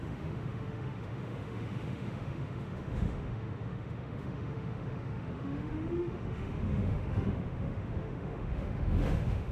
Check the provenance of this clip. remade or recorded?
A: remade